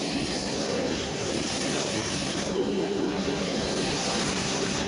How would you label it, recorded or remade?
remade